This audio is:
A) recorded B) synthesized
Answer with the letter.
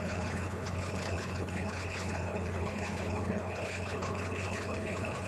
B